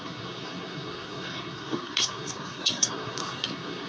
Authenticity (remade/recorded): remade